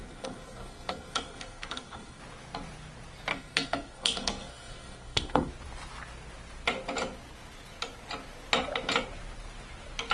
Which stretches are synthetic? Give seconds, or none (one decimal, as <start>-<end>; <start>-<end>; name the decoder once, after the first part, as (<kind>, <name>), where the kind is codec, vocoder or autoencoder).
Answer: 0.0-2.2 (codec, SNAC); 3.3-5.5